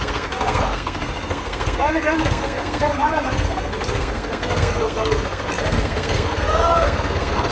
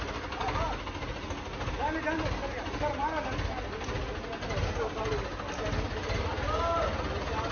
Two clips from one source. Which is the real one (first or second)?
second